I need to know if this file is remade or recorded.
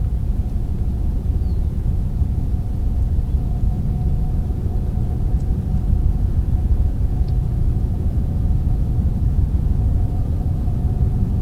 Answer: remade